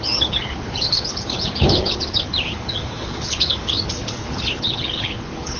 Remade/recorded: remade